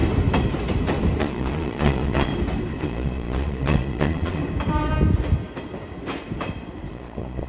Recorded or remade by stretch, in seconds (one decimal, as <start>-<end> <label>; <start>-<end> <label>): 0.0-1.2 recorded; 1.2-2.3 remade; 2.3-2.8 recorded; 2.8-4.4 remade; 4.4-6.9 recorded; 6.9-7.5 remade